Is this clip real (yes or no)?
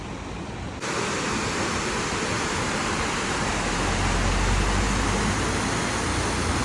yes